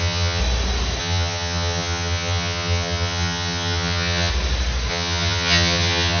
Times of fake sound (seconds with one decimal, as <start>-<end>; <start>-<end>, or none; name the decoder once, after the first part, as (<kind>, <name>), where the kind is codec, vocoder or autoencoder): 0.0-0.4 (vocoder, HiFi-GAN); 1.0-4.3; 4.9-6.2